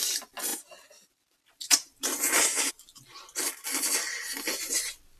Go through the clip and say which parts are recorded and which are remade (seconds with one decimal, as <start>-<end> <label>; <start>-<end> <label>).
0.0-0.5 recorded; 0.5-2.7 remade; 2.7-5.2 recorded